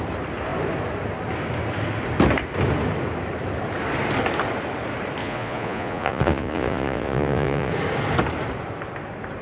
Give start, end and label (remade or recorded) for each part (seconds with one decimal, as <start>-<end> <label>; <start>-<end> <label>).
0.0-5.2 recorded; 5.2-7.7 remade; 7.7-9.4 recorded